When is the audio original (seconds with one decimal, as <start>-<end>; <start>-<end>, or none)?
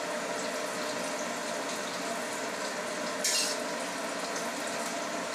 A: 0.0-5.3